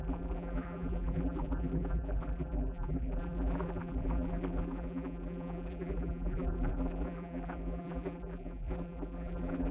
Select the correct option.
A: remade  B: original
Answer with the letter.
A